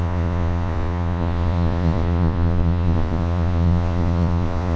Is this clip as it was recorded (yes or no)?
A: no